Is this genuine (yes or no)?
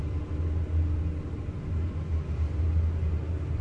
yes